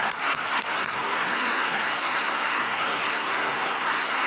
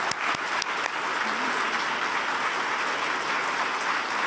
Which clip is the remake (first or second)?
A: first